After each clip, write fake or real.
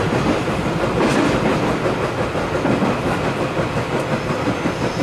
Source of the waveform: real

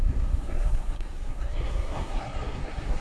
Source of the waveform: fake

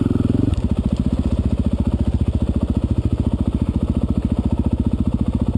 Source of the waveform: real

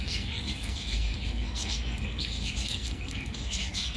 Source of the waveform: fake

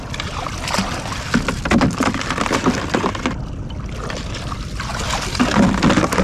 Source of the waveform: real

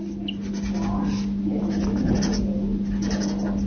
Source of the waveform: real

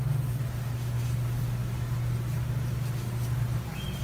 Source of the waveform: real